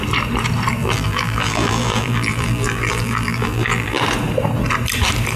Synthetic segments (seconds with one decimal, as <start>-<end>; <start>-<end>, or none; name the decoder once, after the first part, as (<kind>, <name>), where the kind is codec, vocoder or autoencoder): 0.8-4.0 (vocoder, BigVGAN v2)